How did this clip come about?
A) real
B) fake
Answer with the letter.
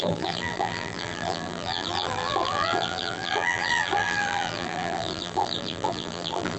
B